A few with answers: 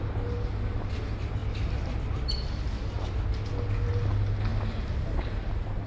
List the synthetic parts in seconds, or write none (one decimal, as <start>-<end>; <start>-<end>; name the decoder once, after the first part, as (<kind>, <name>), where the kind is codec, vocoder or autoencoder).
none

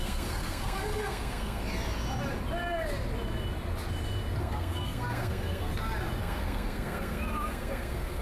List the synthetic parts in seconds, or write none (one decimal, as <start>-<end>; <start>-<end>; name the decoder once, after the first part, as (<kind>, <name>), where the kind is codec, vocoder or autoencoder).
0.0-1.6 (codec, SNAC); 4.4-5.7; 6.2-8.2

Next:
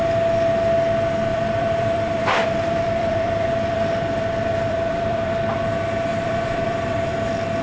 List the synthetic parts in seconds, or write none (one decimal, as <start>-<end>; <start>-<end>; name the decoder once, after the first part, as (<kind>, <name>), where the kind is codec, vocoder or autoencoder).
1.3-5.3 (vocoder, BigVGAN v2); 6.1-7.1